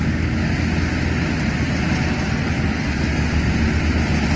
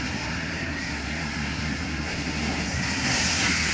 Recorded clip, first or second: first